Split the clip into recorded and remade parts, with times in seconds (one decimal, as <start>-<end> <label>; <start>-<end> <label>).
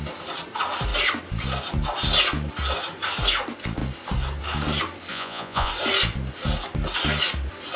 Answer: 0.0-5.1 recorded; 5.1-5.7 remade; 5.7-7.8 recorded